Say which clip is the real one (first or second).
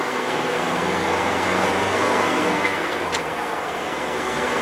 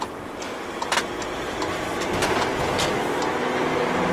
second